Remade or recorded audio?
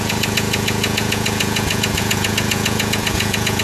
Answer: remade